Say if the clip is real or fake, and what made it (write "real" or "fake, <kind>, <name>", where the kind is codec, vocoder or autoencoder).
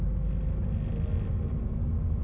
real